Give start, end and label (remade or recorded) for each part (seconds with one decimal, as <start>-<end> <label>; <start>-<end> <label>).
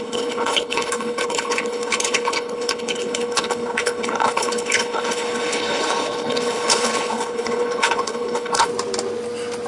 0.0-8.7 remade; 8.7-9.7 recorded